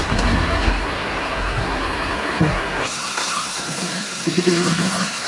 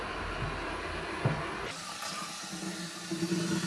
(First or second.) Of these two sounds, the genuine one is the second